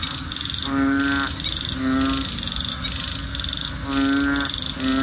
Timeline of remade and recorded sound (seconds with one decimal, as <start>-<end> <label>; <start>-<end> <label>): 0.0-5.0 recorded